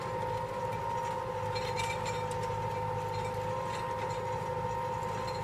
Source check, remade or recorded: recorded